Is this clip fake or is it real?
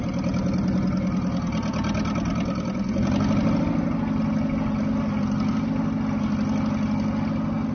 real